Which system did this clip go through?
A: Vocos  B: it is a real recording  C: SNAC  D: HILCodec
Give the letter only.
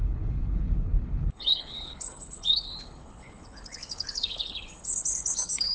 D